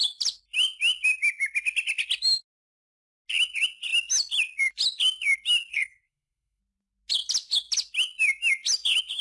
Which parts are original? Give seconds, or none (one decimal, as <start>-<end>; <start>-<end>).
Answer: 0.0-5.7; 6.6-9.2